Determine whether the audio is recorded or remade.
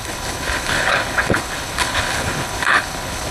remade